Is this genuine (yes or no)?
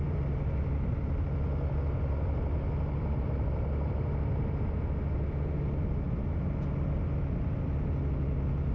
yes